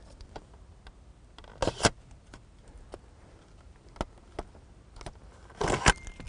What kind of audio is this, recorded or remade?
recorded